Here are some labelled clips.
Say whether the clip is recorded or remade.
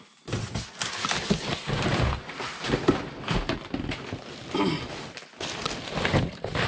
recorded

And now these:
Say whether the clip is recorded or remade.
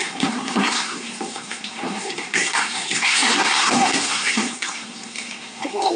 remade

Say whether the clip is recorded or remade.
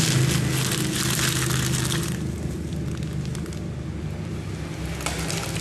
recorded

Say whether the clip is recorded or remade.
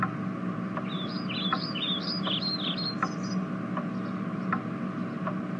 recorded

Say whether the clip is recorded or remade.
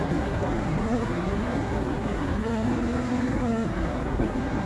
remade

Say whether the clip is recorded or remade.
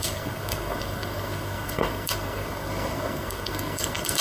remade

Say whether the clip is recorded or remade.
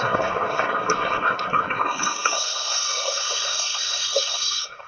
remade